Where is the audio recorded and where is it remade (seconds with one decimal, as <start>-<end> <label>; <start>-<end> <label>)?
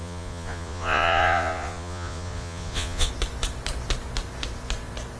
0.0-3.1 remade; 3.1-5.2 recorded